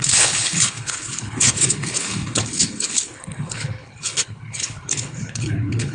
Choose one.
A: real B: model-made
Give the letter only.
B